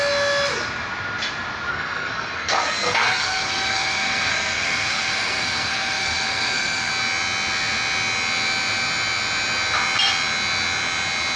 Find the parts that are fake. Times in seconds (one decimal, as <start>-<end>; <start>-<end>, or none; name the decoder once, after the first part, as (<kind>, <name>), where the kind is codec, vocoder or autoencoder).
1.7-6.9 (codec, SNAC)